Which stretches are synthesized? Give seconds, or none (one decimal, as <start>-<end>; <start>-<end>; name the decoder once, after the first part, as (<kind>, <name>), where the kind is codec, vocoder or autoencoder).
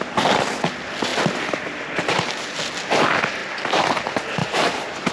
4.4-5.1 (vocoder, BigVGAN v2)